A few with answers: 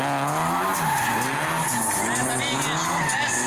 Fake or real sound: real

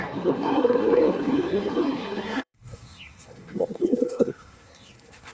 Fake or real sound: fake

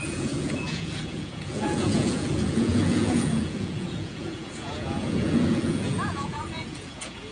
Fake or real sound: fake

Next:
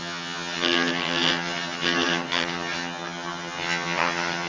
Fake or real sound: fake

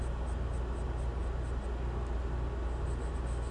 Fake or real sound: real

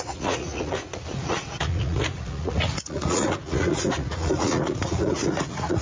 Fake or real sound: fake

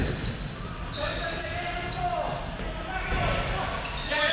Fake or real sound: real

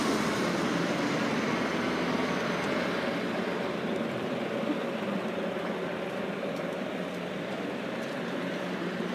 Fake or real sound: fake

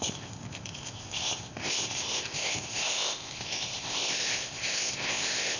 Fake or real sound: fake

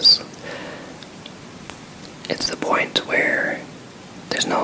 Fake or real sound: real